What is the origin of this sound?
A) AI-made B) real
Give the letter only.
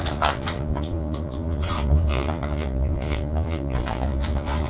A